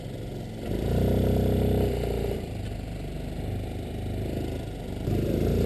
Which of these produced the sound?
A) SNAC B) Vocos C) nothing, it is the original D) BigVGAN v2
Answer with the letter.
C